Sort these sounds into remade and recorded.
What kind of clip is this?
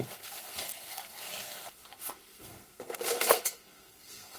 remade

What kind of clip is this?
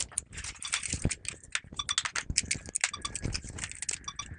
recorded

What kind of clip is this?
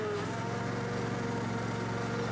recorded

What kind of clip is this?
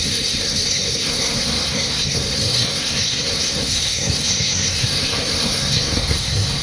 remade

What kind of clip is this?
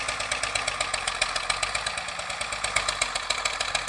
recorded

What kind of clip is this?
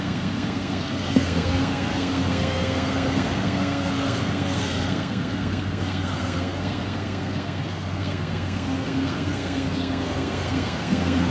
remade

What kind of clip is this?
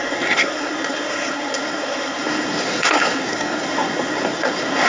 remade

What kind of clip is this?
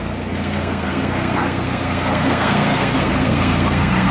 remade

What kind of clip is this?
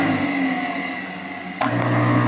recorded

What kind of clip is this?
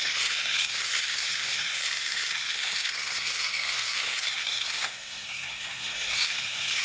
remade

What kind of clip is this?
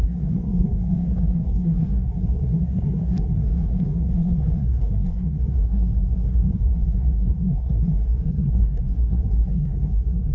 remade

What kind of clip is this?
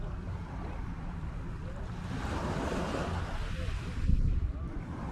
recorded